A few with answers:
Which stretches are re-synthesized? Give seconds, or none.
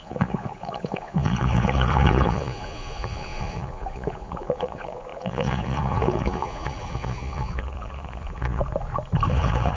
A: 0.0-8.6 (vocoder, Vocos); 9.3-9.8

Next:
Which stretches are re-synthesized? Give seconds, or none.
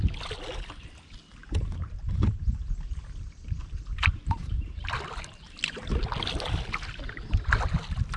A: 1.4-2.5 (vocoder, BigVGAN v2); 3.9-4.9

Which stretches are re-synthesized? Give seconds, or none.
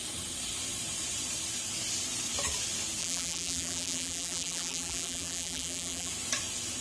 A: 3.0-6.1 (vocoder, BigVGAN v2)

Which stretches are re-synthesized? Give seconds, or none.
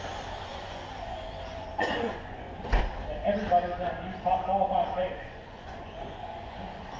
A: 0.5-2.8 (vocoder, Vocos); 5.0-7.0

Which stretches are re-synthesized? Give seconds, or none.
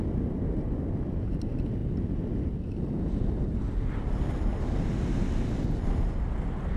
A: none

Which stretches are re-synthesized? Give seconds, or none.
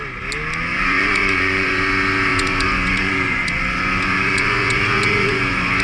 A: 0.7-1.8 (vocoder, Vocos); 2.3-5.8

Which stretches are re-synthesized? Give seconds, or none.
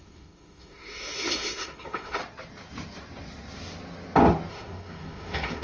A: 0.0-2.2 (autoencoder, DAC-VAE); 4.5-5.6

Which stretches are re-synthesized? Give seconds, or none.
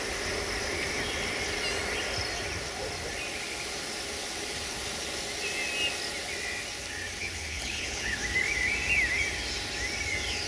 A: 7.2-8.2 (codec, HILCodec)